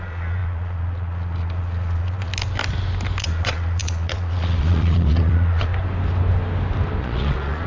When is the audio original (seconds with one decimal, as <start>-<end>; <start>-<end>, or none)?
2.3-3.2; 5.7-7.0